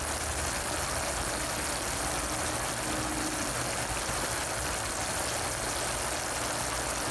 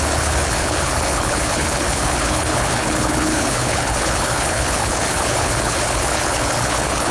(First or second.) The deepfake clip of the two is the second